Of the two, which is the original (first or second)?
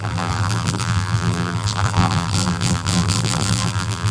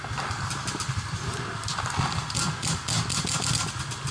second